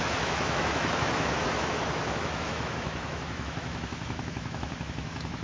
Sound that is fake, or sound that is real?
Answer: fake